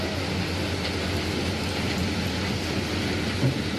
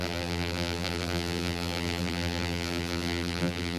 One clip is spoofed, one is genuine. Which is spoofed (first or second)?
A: second